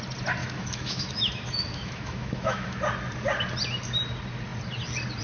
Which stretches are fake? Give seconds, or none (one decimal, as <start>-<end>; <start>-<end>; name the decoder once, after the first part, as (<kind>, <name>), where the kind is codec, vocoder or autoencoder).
0.4-2.8 (autoencoder, DAC-VAE)